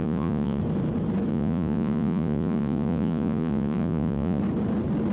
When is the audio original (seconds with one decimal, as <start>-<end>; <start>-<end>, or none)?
0.6-1.3; 4.4-5.1